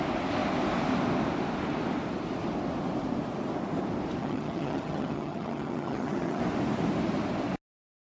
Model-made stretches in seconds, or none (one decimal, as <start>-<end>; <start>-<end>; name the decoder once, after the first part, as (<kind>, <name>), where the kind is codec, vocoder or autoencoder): 4.2-6.4 (vocoder, HiFi-GAN)

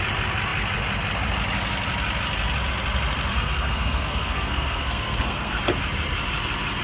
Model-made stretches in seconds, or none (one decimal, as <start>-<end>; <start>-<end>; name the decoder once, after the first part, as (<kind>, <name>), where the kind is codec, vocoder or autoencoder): 3.3-5.6 (codec, SNAC)